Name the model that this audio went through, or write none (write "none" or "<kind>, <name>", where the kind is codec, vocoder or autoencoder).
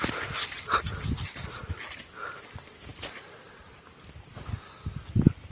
none